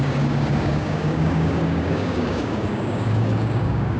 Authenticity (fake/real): fake